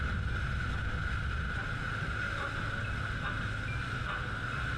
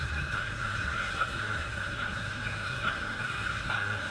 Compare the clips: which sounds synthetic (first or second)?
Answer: second